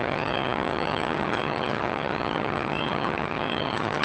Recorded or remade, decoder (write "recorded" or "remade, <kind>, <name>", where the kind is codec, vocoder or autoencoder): remade, vocoder, HiFi-GAN